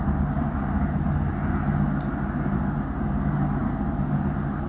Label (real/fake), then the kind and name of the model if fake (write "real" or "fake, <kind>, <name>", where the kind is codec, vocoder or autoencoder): real